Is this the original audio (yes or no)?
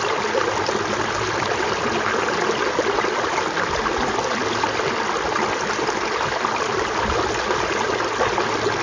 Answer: yes